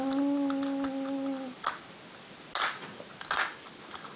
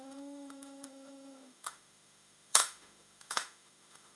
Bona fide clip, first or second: first